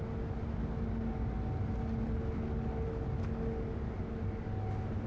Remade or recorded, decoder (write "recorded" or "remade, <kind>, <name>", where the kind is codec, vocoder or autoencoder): recorded